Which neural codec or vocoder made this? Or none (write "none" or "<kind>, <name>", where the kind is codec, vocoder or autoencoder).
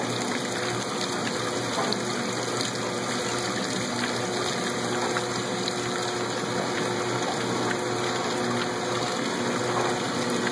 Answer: none